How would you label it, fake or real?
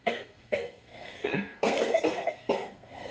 fake